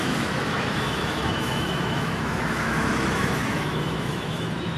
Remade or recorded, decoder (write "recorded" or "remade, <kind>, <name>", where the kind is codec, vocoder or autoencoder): remade, autoencoder, DAC-VAE